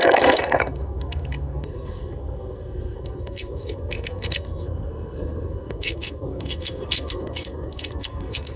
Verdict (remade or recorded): remade